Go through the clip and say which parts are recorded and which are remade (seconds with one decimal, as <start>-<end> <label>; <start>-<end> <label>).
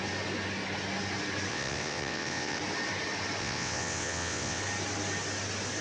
0.0-1.5 recorded; 1.5-2.6 remade; 2.6-3.4 recorded; 3.4-4.6 remade; 4.6-5.8 recorded